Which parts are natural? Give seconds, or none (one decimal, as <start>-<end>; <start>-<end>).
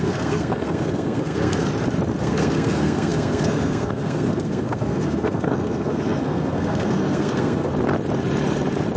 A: 1.7-2.2; 7.7-9.0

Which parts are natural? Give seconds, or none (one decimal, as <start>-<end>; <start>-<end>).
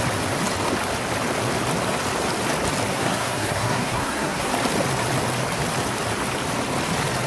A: 0.0-2.9; 4.5-7.3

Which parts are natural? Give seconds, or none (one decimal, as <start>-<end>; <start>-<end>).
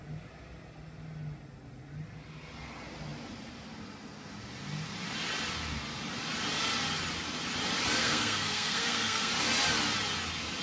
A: 0.0-8.0; 9.3-10.6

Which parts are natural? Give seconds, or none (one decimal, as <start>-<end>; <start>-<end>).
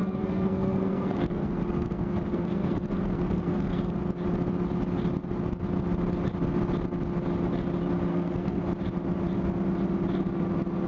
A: 3.9-8.1; 8.6-10.9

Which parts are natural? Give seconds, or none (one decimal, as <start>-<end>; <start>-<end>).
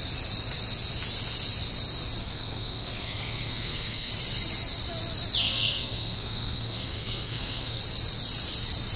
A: 0.0-2.2; 4.1-5.4; 7.8-9.0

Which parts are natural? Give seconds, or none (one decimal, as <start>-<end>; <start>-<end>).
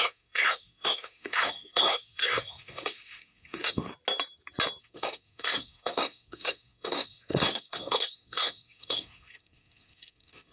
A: 3.9-4.8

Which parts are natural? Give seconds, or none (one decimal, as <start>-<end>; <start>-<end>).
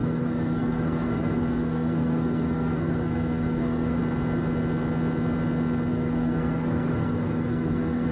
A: 4.0-5.9